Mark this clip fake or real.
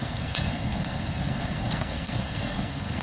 fake